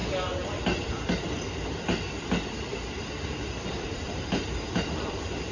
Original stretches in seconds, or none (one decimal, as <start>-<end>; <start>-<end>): 0.0-3.0